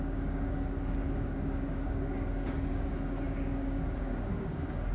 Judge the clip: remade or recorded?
remade